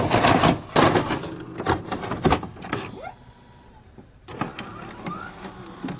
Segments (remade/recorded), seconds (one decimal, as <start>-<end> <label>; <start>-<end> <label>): 0.0-6.0 recorded